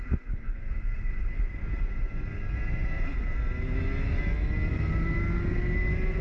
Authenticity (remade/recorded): recorded